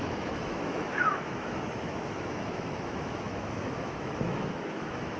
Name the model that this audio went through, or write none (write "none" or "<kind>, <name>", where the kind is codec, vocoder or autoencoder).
autoencoder, DAC-VAE